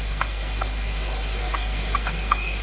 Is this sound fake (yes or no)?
yes